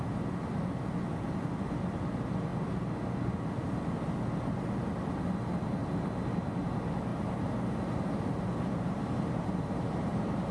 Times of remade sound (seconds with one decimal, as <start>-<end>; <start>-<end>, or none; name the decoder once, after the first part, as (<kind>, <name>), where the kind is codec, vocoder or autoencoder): 5.8-6.5 (vocoder, BigVGAN v2); 7.1-10.5